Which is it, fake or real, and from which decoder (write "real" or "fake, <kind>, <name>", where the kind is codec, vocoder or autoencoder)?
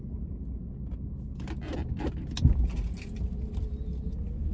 real